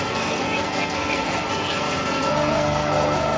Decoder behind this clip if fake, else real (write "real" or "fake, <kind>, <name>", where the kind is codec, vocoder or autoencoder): fake, codec, SNAC